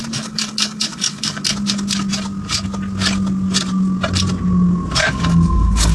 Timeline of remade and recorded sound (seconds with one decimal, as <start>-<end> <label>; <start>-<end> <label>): 0.0-1.4 remade; 1.4-5.0 recorded; 5.0-5.9 remade